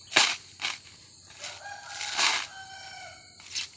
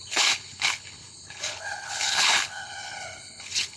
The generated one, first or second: second